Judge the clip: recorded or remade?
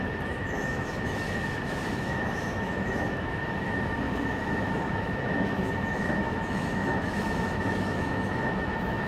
remade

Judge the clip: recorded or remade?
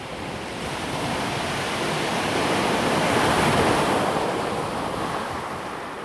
remade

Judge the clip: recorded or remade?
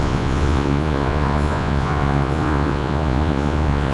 remade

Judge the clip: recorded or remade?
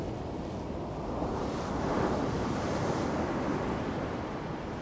recorded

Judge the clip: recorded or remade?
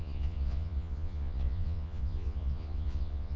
remade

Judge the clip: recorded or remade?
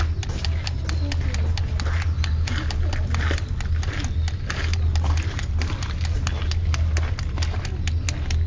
recorded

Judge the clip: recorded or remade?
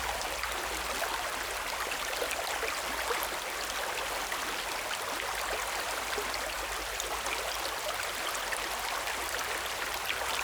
recorded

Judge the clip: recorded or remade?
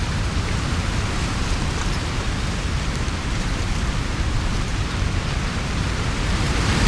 remade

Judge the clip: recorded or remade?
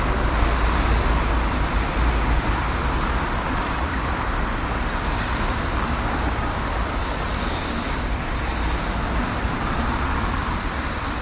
recorded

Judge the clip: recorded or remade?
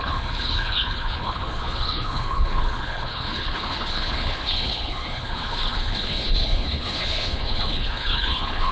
remade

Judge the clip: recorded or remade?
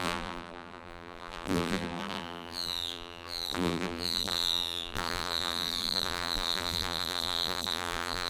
remade